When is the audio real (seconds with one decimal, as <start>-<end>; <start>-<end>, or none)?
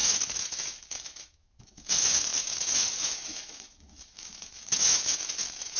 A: none